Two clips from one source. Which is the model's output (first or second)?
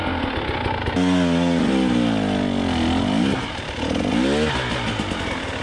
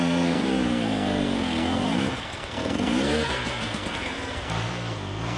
second